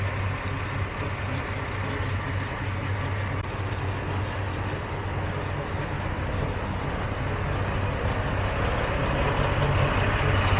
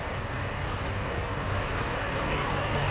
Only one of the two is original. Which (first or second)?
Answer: first